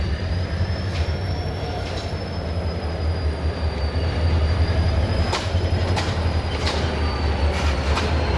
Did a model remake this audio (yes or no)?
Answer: yes